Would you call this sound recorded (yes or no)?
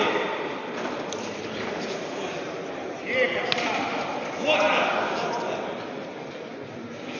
yes